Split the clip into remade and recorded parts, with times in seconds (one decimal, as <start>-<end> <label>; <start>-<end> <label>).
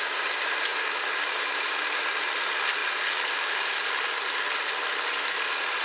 0.0-5.8 recorded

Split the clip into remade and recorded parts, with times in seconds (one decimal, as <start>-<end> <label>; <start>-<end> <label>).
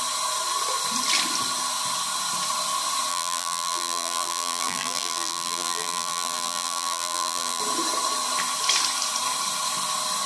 0.0-3.1 recorded; 3.1-7.6 remade; 7.6-10.3 recorded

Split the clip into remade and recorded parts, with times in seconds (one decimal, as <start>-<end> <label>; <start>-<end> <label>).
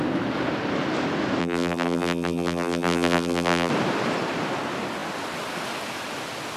0.0-1.4 recorded; 1.4-3.7 remade; 3.7-6.6 recorded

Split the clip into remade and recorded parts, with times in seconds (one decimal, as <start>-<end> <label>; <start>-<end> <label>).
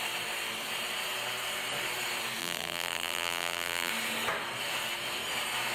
0.0-2.4 recorded; 2.4-3.9 remade; 3.9-5.7 recorded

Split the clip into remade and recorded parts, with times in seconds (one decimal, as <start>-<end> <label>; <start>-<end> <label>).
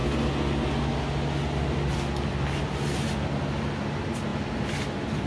0.0-5.3 recorded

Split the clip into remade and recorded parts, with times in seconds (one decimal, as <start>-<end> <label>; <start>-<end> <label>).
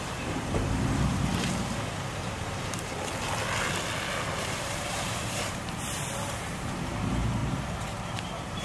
0.0-1.3 remade; 1.3-4.4 recorded; 4.4-8.6 remade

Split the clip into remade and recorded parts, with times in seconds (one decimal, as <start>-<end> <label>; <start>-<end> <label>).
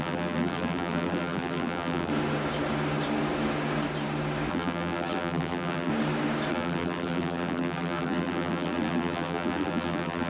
0.0-2.1 remade; 2.1-4.5 recorded; 4.5-5.9 remade; 5.9-6.5 recorded; 6.5-10.3 remade